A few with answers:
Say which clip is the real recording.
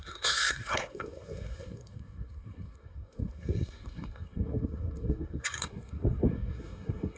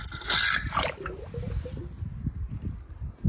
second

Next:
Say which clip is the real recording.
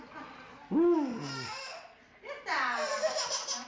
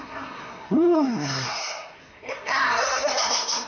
first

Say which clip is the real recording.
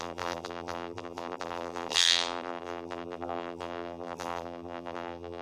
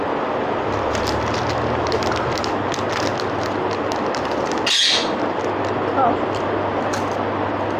second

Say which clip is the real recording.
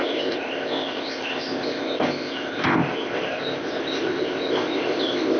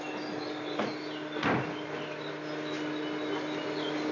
second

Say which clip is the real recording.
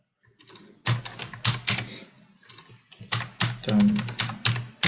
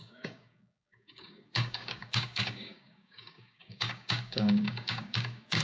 first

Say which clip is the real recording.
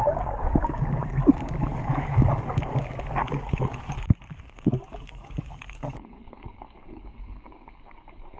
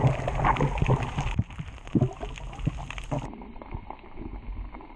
second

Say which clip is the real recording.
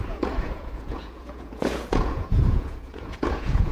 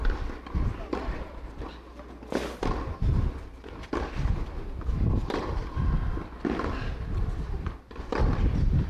second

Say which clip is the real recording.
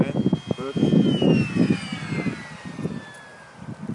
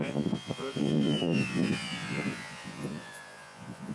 first